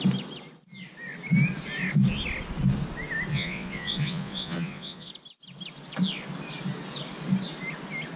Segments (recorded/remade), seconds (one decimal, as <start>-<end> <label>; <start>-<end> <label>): 0.0-3.3 recorded; 3.3-5.1 remade; 5.1-8.2 recorded